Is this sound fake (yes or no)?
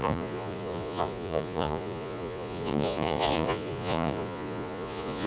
yes